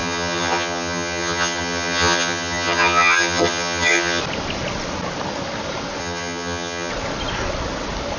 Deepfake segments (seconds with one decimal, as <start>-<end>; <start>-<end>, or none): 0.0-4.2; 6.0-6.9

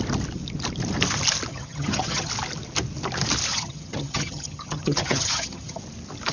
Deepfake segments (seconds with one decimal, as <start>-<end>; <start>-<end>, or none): 1.5-2.3; 3.5-5.8

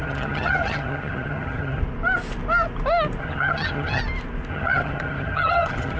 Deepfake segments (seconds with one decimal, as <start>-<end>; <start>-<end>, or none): 0.0-1.8; 3.2-4.0; 4.5-6.0